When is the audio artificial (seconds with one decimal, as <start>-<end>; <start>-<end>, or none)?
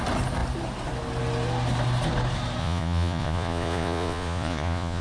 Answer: 2.6-5.0